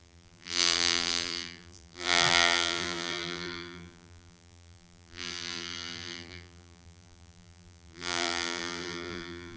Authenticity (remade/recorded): remade